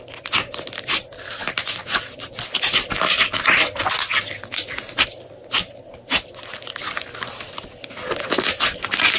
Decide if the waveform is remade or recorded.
recorded